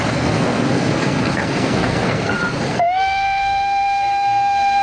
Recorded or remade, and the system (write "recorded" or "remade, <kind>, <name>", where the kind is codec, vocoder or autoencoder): remade, codec, SNAC